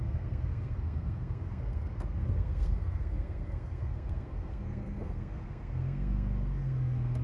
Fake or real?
fake